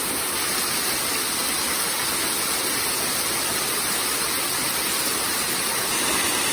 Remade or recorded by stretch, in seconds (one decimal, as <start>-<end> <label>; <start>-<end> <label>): 0.0-6.5 recorded